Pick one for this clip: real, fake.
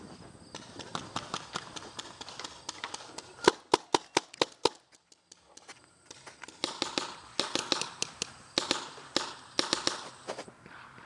real